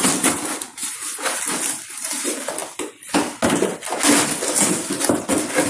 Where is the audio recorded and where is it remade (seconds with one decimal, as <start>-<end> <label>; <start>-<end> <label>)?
0.0-5.7 recorded